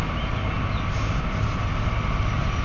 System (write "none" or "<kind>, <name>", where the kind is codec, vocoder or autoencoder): none